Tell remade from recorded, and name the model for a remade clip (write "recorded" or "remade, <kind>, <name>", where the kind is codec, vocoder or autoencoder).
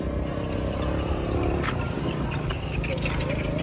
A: recorded